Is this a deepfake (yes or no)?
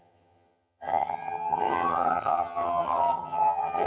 yes